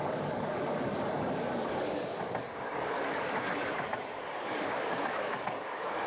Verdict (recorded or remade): remade